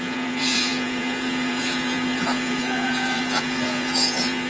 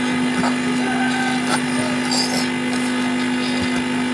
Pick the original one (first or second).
second